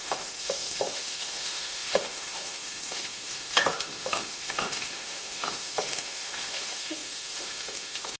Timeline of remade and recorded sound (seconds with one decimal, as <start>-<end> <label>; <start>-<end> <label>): 0.0-8.2 remade